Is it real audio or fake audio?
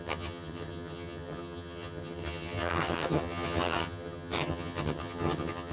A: fake